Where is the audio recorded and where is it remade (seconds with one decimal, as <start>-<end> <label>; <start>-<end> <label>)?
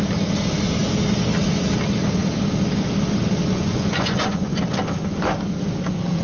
0.0-3.5 recorded; 3.5-4.6 remade; 4.6-6.2 recorded